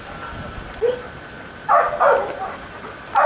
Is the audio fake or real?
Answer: real